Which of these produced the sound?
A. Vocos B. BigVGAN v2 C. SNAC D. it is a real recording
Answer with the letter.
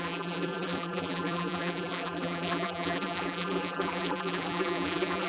B